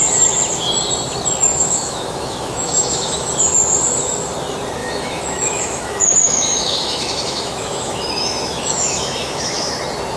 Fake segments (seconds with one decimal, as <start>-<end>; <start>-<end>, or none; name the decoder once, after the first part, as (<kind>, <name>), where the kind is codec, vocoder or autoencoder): 1.5-3.3 (autoencoder, DAC-VAE); 4.8-9.7